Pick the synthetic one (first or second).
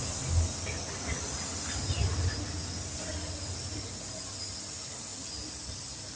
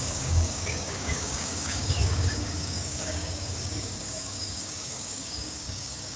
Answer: second